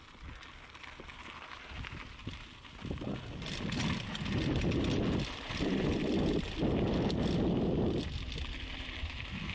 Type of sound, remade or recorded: recorded